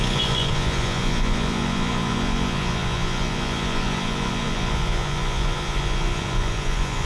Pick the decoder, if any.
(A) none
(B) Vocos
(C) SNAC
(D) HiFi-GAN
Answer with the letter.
B